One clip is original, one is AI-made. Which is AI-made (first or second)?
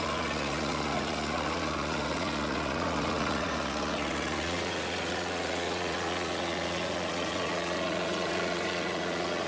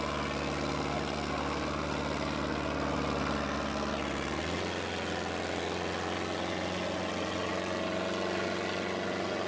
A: first